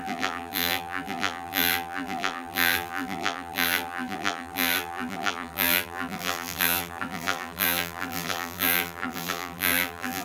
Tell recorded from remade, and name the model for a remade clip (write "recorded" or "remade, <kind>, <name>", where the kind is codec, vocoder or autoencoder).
remade, vocoder, BigVGAN v2